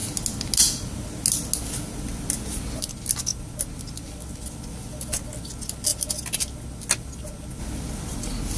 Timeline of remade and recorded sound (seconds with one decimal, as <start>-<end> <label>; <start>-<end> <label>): 0.0-8.6 recorded